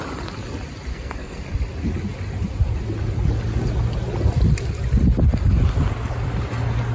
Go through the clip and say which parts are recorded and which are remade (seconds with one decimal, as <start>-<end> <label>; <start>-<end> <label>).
0.0-0.9 recorded; 0.9-1.4 remade; 1.4-6.9 recorded